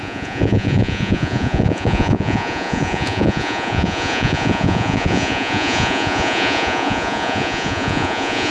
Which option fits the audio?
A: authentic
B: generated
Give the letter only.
B